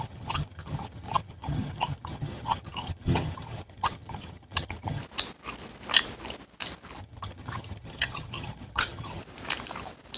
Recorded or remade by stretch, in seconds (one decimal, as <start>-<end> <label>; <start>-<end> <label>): 0.0-5.0 remade; 5.0-7.0 recorded; 7.0-9.2 remade; 9.2-10.2 recorded

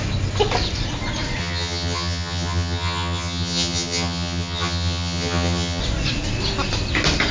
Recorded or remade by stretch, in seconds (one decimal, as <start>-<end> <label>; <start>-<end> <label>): 0.0-1.4 recorded; 1.4-5.8 remade; 5.8-7.3 recorded

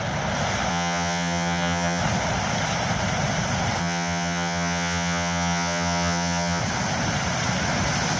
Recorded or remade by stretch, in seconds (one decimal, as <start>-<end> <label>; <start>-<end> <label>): 0.0-0.7 recorded; 0.7-2.0 remade; 2.0-3.8 recorded; 3.8-6.6 remade; 6.6-8.2 recorded

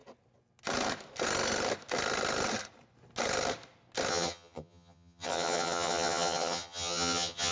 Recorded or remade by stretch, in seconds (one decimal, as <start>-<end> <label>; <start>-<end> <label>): 0.0-4.1 recorded; 4.1-7.5 remade

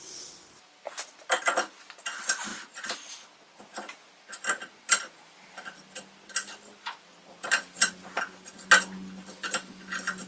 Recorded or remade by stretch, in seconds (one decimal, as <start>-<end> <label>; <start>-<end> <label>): 0.0-10.3 recorded

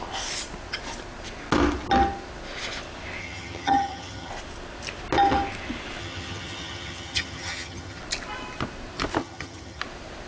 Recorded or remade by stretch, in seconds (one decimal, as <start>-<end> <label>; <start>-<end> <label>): 0.0-3.2 recorded; 3.2-4.3 remade; 4.3-6.0 recorded; 6.0-8.0 remade; 8.0-9.2 recorded; 9.2-9.8 remade; 9.8-10.3 recorded

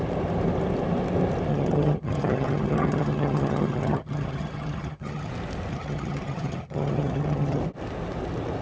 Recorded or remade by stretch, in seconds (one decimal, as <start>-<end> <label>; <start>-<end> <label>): 0.0-1.5 recorded; 1.5-5.3 remade; 5.3-5.7 recorded; 5.7-7.6 remade; 7.6-8.6 recorded

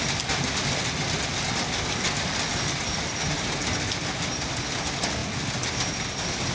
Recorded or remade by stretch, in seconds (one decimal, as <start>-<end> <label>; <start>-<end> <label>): 0.0-6.5 recorded